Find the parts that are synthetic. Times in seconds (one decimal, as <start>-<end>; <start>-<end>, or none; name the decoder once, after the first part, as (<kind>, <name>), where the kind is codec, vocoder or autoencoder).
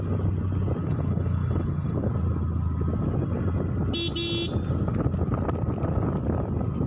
0.8-2.1 (codec, HILCodec)